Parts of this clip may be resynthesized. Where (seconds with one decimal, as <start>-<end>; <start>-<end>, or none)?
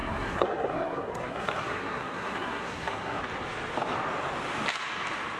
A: 0.0-3.2